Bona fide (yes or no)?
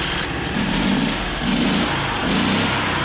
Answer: yes